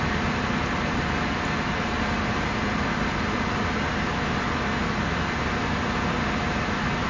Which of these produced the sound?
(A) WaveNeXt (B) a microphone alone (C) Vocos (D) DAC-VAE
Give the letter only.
B